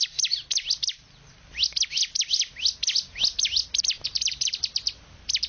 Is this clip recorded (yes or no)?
yes